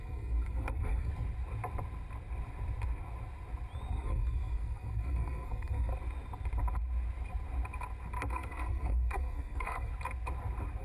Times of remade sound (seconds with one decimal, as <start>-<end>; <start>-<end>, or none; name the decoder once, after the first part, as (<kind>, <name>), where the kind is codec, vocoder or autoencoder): 0.0-1.1 (codec, SNAC); 3.9-5.9; 8.3-9.9